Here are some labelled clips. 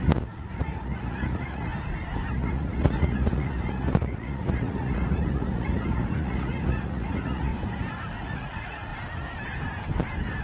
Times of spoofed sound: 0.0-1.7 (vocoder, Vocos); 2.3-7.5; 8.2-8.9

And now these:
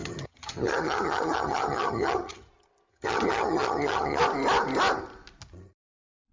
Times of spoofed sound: 0.0-2.5 (vocoder, HiFi-GAN); 2.9-4.2

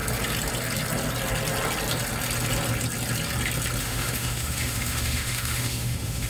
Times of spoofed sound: 3.8-6.3 (autoencoder, DAC-VAE)

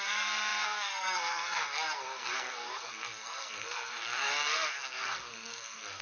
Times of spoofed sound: 0.0-6.0 (codec, SNAC)

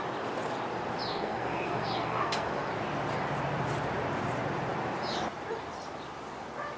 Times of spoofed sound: 1.1-2.7 (codec, SNAC)

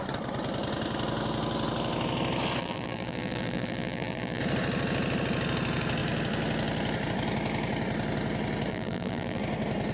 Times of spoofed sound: 2.6-4.4 (vocoder, BigVGAN v2); 8.7-9.4

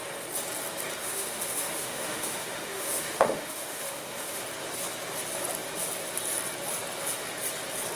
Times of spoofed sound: 1.0-4.4 (autoencoder, DAC-VAE)

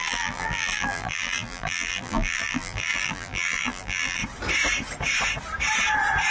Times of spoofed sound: 0.0-4.2 (vocoder, BigVGAN v2)